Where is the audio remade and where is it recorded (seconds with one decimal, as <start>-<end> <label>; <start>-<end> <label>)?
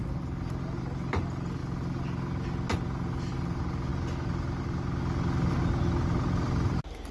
0.0-7.1 recorded